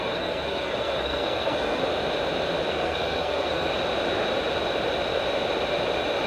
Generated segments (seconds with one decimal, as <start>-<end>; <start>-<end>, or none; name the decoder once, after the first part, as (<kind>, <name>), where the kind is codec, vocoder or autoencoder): 0.0-1.8 (codec, SNAC); 2.7-3.7